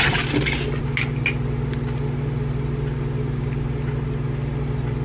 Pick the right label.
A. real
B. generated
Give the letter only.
A